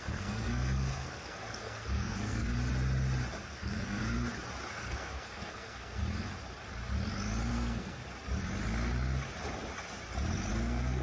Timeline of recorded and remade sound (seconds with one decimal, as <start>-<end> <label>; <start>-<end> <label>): 0.0-2.5 remade; 2.5-3.5 recorded; 3.5-4.0 remade; 4.0-4.7 recorded; 4.7-6.0 remade; 6.0-7.5 recorded; 7.5-8.0 remade; 8.0-10.5 recorded; 10.5-11.0 remade